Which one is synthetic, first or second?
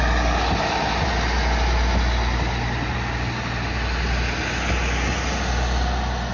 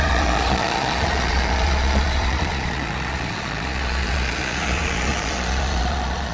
second